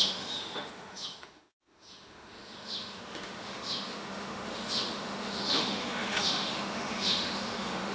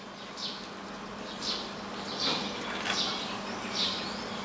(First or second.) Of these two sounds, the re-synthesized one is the first